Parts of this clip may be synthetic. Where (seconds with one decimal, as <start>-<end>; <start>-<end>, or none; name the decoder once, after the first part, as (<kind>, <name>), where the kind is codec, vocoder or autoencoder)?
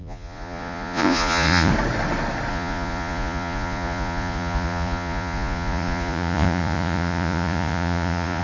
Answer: 0.0-1.7 (vocoder, Vocos); 2.5-8.4